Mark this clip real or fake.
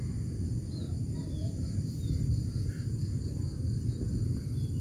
real